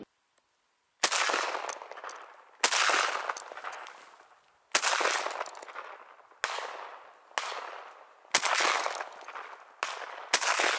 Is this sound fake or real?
real